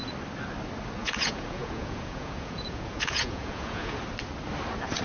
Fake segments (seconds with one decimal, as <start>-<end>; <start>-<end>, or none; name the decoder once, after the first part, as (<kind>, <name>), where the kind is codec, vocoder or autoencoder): 1.0-4.0 (vocoder, Vocos)